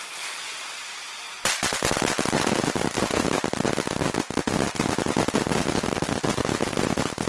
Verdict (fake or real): real